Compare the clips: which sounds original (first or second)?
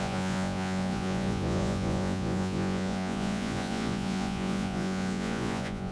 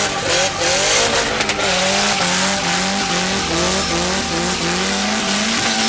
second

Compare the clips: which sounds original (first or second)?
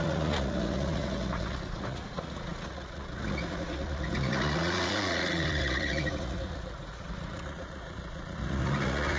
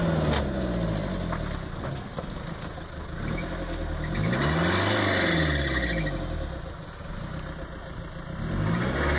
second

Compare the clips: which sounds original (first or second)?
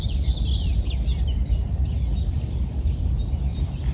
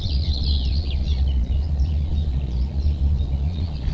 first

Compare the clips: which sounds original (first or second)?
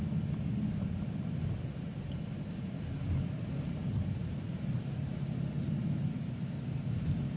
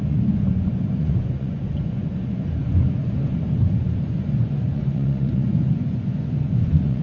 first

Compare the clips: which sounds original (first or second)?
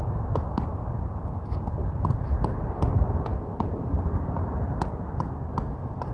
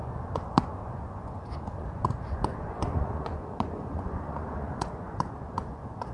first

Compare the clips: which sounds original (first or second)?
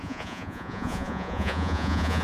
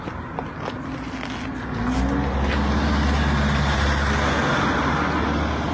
second